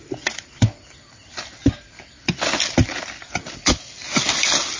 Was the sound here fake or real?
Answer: real